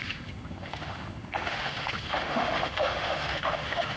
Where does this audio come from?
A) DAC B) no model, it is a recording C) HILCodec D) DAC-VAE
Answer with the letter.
D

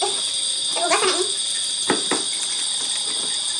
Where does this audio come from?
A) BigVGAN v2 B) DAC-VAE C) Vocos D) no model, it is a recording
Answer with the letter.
D